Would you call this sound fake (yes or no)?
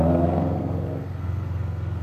yes